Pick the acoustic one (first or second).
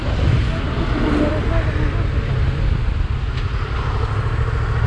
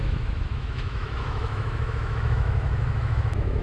first